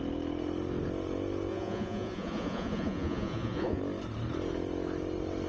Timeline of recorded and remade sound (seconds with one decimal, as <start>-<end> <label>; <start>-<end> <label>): 0.0-1.5 recorded; 1.5-3.8 remade; 3.8-5.5 recorded